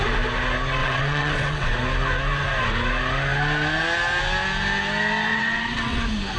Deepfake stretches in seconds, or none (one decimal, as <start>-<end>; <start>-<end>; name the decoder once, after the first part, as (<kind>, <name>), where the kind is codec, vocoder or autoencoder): 0.8-1.7 (vocoder, WaveNeXt); 5.3-6.0